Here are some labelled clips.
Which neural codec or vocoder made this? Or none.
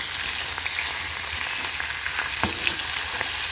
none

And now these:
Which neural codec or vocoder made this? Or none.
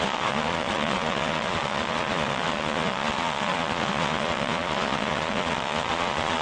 vocoder, Vocos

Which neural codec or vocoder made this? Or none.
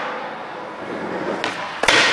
none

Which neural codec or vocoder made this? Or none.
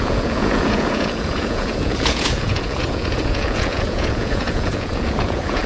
vocoder, Vocos